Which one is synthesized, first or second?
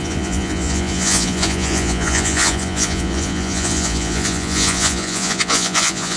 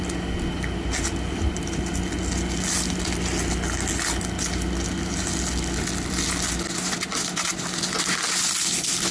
first